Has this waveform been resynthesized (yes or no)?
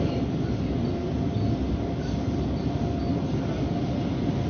no